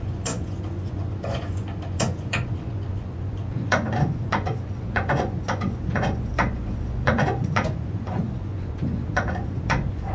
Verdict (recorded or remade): remade